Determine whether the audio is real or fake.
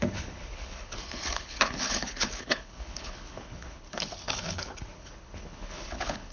fake